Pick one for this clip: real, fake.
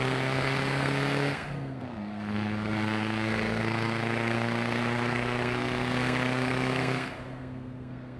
fake